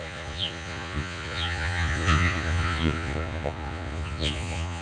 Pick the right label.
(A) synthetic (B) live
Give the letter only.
A